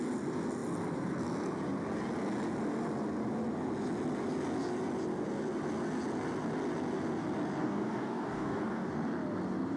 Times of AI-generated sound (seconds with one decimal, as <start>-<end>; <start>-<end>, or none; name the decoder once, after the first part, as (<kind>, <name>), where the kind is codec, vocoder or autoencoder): 7.6-8.9 (codec, DAC)